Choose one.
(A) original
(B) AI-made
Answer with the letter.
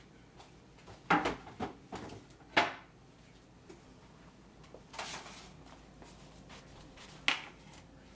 A